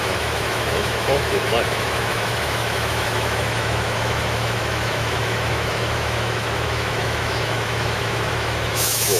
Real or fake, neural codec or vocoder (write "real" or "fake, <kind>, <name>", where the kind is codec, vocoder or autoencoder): fake, autoencoder, DAC-VAE